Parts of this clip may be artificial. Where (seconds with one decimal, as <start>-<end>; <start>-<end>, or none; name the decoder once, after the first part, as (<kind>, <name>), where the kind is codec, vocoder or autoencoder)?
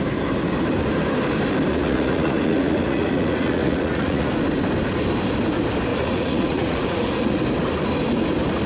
1.7-4.3 (vocoder, Vocos); 5.9-7.4